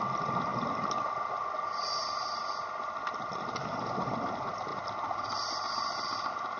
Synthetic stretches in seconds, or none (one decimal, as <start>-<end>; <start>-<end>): none